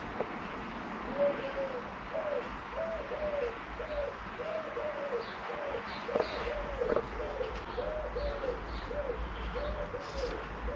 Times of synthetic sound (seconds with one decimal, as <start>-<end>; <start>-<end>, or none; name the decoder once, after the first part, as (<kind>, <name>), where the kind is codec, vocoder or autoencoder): 4.0-7.0 (vocoder, Vocos)